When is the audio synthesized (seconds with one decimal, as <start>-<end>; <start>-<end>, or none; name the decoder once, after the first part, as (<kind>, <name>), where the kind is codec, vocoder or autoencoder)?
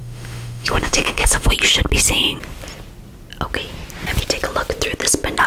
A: 0.0-1.5 (autoencoder, DAC-VAE)